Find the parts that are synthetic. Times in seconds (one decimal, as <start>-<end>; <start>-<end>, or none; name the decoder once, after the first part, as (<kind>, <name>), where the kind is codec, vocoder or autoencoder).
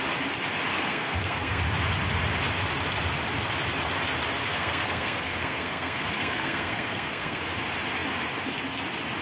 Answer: 0.7-1.6 (codec, SNAC); 4.4-7.4